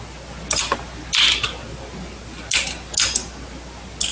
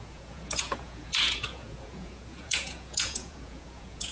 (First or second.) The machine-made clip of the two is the second